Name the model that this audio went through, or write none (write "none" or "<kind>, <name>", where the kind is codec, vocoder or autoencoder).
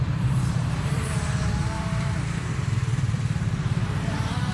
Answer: vocoder, BigVGAN v2